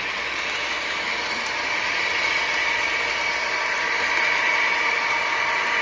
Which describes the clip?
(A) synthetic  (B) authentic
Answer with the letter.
B